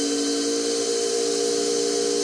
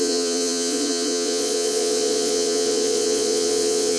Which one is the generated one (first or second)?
second